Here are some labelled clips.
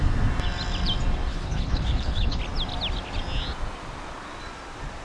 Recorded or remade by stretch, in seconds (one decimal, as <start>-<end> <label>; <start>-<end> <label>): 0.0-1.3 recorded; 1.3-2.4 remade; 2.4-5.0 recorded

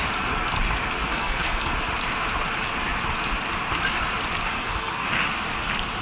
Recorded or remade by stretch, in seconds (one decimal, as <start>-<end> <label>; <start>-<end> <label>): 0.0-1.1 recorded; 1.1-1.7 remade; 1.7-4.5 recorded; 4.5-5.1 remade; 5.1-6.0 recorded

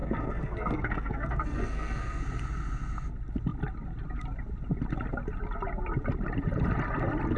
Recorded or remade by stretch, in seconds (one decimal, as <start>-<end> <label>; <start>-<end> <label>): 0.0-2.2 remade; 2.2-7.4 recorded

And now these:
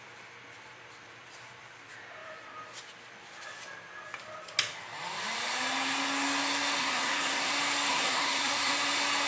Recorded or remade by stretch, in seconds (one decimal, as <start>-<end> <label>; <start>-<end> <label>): 0.0-6.8 recorded; 6.8-7.5 remade; 7.5-7.9 recorded; 7.9-8.7 remade; 8.7-9.3 recorded

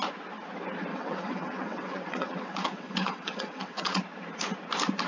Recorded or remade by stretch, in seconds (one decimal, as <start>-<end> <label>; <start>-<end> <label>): 0.0-0.9 recorded; 0.9-4.0 remade; 4.0-5.1 recorded

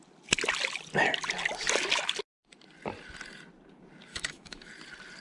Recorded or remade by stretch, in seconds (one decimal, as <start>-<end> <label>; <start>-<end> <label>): 0.0-4.1 recorded; 4.1-4.7 remade; 4.7-5.2 recorded